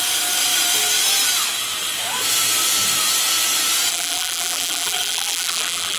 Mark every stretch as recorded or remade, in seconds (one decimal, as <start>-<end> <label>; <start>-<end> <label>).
0.0-3.9 recorded; 3.9-6.0 remade